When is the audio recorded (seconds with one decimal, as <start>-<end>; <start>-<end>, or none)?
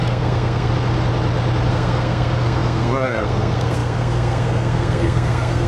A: 0.7-1.7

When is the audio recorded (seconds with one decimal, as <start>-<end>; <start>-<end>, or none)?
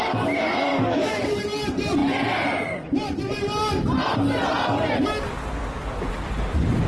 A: 0.0-0.7; 1.4-6.9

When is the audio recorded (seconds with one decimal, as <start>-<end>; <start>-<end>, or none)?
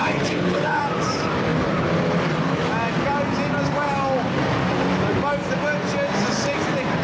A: 0.8-7.0